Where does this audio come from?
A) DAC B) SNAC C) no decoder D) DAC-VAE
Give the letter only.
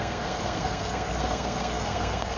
B